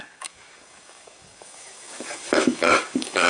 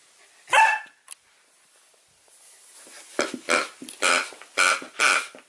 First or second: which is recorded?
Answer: second